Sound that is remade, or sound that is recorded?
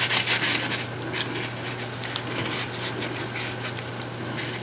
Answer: recorded